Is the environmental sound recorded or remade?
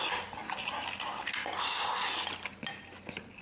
recorded